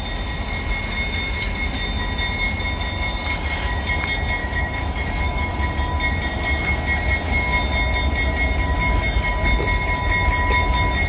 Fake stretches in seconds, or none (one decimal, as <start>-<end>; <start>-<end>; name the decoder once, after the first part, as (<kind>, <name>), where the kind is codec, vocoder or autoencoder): 4.4-5.7 (autoencoder, DAC-VAE)